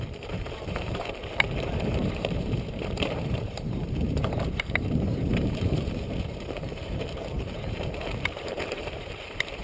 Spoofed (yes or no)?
yes